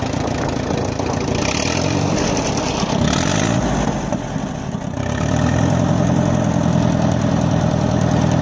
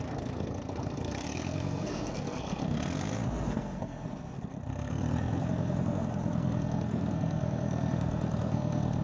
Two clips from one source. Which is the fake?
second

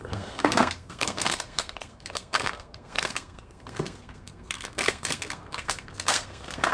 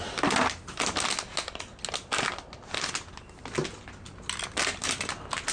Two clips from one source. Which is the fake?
first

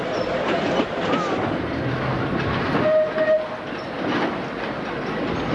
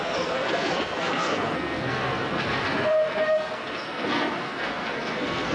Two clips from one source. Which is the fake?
second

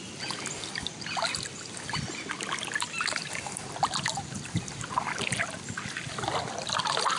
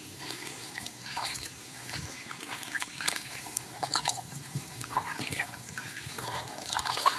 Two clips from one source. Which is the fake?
second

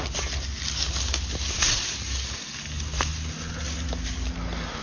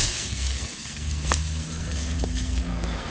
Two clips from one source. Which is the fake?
second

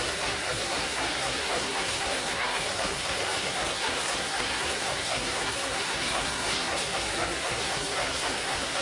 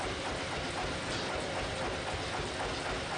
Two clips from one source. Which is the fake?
first